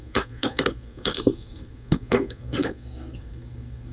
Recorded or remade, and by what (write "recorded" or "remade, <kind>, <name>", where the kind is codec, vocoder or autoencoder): remade, codec, SNAC